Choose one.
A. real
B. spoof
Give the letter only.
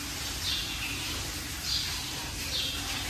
B